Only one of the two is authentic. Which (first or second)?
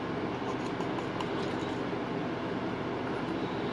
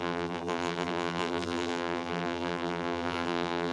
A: first